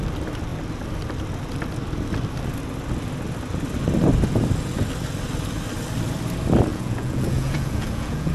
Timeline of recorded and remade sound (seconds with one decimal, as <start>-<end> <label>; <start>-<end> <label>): 0.0-6.7 recorded; 6.7-8.3 remade

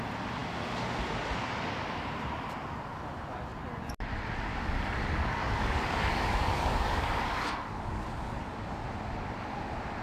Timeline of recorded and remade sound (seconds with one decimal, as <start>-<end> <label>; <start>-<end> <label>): 0.0-4.5 recorded; 4.5-8.7 remade; 8.7-10.0 recorded

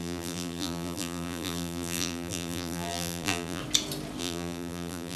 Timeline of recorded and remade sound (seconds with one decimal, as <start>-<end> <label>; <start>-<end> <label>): 0.0-3.6 remade; 3.6-4.2 recorded; 4.2-5.2 remade

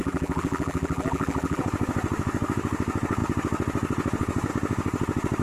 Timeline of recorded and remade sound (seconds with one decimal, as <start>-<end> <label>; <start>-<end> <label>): 0.0-1.6 remade; 1.6-5.4 recorded